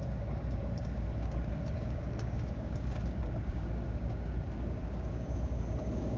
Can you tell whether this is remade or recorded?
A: remade